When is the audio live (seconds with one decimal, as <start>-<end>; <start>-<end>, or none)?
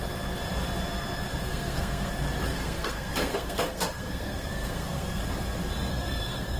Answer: 0.0-1.5; 2.1-2.5; 5.2-5.9